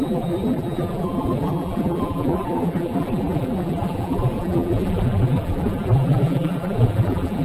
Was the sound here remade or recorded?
remade